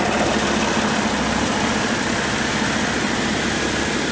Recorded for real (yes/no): yes